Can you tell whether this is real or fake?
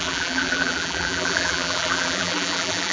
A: fake